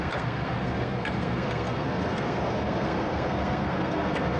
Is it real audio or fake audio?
fake